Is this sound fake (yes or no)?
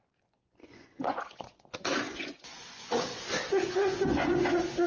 yes